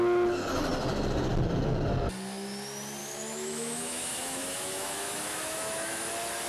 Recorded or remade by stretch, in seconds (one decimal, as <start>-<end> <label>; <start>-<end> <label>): 0.0-3.0 recorded; 3.0-6.1 remade; 6.1-6.5 recorded